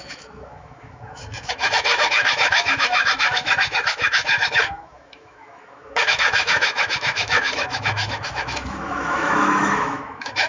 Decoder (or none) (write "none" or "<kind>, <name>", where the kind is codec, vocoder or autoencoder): autoencoder, DAC-VAE